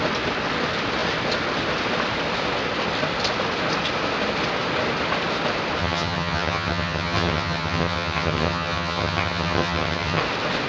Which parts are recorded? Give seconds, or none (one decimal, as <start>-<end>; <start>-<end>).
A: 0.0-5.8; 10.2-10.7